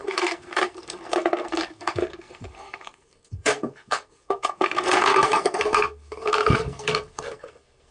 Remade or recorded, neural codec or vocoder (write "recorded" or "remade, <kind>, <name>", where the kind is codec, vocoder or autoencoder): remade, codec, SNAC